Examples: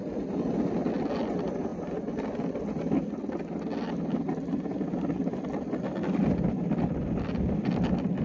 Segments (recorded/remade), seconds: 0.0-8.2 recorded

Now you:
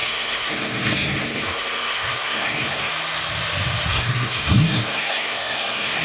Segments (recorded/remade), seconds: 0.0-2.9 remade; 2.9-3.9 recorded; 3.9-6.0 remade

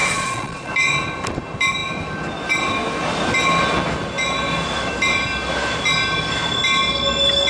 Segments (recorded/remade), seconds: 0.0-0.7 remade; 0.7-7.5 recorded

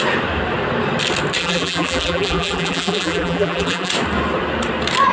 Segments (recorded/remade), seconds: 0.0-1.4 recorded; 1.4-3.9 remade; 3.9-5.1 recorded

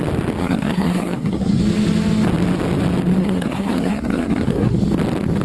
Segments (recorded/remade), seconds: 0.0-0.4 recorded; 0.4-1.6 remade; 1.6-3.2 recorded; 3.2-4.8 remade; 4.8-5.4 recorded

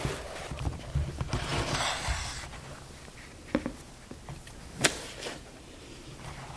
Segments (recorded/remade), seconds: 0.0-6.6 recorded

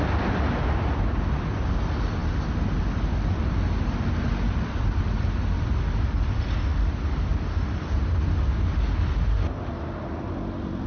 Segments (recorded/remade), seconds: 0.0-10.9 recorded

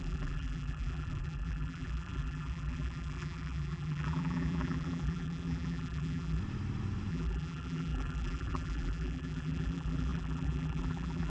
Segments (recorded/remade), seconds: 0.0-6.4 remade; 6.4-7.1 recorded; 7.1-11.3 remade